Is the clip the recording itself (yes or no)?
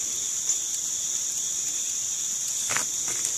yes